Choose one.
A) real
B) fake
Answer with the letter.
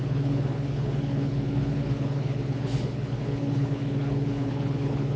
B